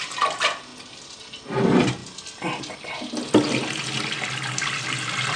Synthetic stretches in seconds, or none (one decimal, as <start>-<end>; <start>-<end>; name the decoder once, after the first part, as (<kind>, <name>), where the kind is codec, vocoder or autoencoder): none